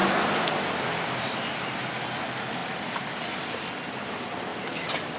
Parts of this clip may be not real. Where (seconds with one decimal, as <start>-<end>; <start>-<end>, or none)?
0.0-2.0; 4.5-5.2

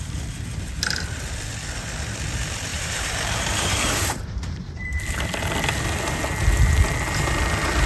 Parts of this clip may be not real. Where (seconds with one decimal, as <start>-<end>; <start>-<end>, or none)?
2.7-5.0

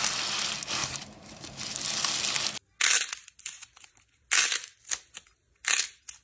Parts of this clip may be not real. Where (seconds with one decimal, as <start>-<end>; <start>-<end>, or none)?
0.8-1.6